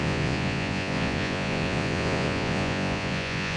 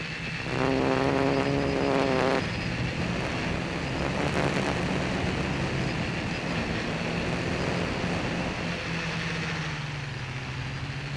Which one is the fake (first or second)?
first